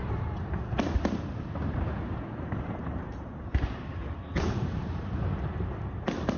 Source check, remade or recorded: remade